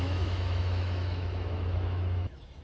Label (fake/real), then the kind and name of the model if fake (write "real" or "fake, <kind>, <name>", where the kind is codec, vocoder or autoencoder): fake, autoencoder, DAC-VAE